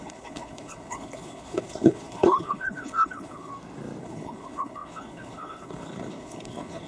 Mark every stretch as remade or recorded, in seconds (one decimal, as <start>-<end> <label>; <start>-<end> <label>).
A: 0.0-3.5 remade; 3.5-4.0 recorded; 4.0-6.9 remade